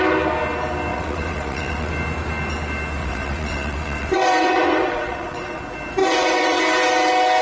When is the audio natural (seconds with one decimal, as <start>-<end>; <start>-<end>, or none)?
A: 0.0-0.9; 1.9-3.0; 5.6-6.0; 6.6-7.4